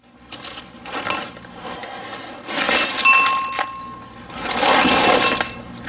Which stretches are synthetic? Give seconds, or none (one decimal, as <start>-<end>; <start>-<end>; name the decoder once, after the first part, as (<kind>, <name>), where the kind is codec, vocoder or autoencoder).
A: none

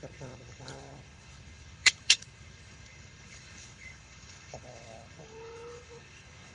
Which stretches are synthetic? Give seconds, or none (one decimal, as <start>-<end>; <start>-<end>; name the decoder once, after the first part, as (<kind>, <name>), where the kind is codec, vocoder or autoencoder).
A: 0.0-6.5 (codec, HILCodec)

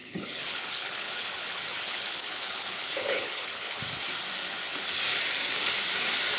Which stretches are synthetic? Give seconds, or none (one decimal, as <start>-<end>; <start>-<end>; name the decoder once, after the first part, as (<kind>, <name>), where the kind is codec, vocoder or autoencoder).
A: 0.0-3.8 (codec, HILCodec)

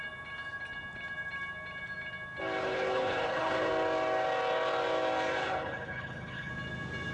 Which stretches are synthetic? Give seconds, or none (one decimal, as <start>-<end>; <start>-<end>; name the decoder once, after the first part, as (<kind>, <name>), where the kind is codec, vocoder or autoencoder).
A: 2.6-3.7 (codec, HILCodec); 5.4-6.5

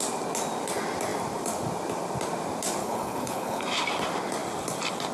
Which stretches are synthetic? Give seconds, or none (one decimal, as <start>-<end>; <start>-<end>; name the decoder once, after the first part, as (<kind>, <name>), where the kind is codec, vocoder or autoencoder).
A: 2.8-3.6 (codec, HILCodec)